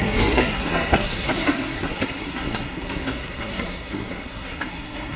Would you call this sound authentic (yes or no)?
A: no